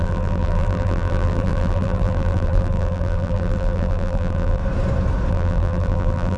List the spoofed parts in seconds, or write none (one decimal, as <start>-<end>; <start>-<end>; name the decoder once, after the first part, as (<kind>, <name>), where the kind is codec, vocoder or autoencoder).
0.0-4.6 (vocoder, BigVGAN v2); 5.3-6.4